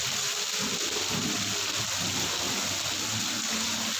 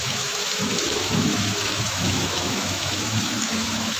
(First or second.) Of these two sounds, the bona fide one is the first